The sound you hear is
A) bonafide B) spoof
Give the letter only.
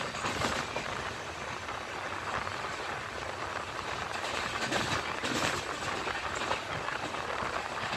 A